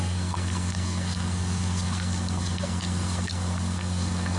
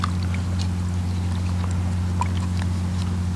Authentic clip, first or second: second